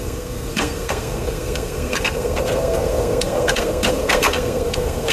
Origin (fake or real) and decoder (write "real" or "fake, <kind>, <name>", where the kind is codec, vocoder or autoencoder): fake, codec, SNAC